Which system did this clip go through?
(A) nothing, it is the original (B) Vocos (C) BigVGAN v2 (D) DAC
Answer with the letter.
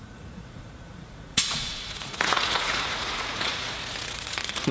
B